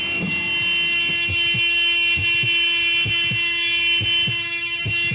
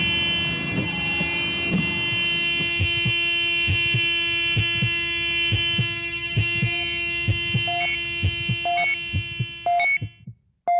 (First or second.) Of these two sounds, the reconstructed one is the first